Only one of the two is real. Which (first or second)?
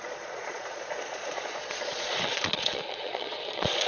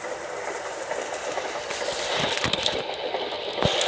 second